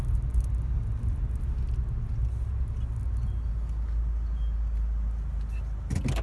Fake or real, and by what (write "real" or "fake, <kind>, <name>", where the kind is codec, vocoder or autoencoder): real